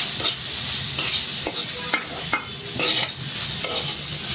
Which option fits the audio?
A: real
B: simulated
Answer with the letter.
A